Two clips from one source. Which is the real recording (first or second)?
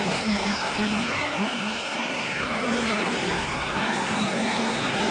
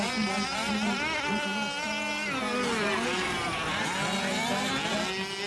second